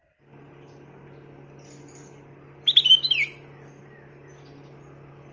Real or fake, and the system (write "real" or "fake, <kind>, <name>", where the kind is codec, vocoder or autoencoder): real